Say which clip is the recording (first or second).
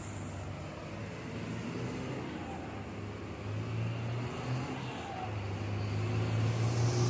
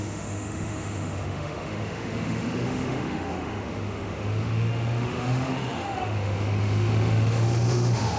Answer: first